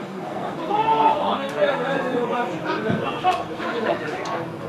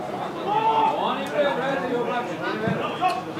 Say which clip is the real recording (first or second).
second